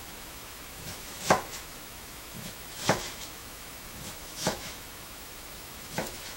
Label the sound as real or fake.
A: fake